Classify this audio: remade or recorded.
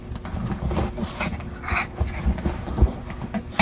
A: recorded